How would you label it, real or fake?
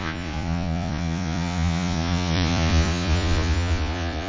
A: fake